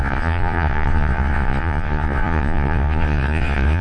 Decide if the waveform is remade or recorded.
remade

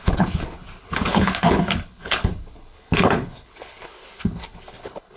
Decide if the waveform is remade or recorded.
remade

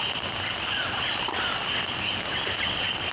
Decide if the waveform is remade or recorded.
recorded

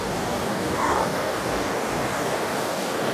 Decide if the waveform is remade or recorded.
remade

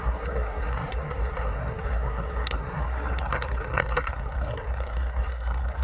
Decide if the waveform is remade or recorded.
remade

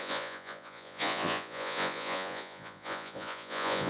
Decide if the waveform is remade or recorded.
remade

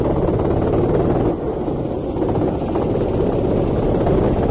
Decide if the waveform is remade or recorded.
recorded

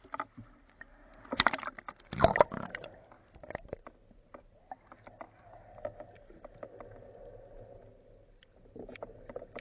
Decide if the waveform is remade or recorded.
recorded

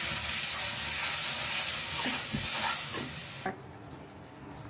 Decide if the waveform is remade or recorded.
recorded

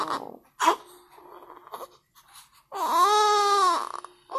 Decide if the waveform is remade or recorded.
recorded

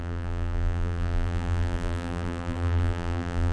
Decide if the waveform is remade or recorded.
remade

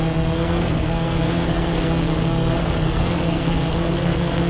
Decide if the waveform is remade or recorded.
remade